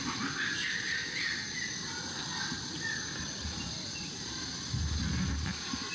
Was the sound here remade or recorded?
recorded